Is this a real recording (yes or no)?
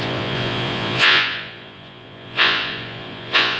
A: no